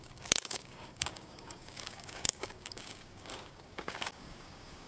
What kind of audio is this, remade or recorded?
remade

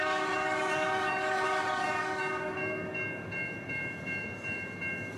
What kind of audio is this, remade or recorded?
remade